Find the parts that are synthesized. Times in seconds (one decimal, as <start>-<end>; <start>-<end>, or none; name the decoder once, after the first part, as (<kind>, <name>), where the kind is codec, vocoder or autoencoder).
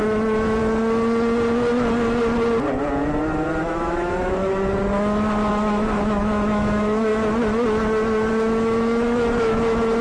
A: 0.0-0.6 (autoencoder, DAC-VAE); 3.6-4.8; 5.5-7.1; 8.3-10.0